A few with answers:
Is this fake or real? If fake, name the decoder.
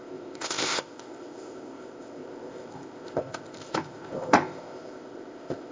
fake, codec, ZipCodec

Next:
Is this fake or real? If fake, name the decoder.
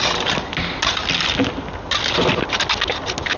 real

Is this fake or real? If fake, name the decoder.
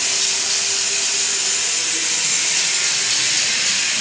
real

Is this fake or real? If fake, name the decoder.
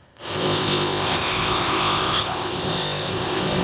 fake, codec, ZipCodec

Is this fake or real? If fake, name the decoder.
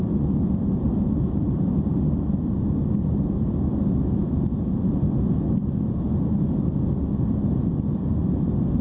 real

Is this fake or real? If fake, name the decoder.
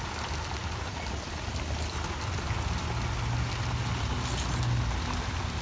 real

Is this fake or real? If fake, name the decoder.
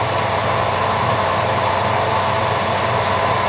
real